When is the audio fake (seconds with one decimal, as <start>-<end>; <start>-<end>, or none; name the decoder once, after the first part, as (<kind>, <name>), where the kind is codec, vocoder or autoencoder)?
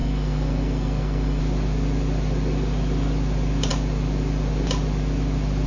0.0-1.4 (codec, SNAC)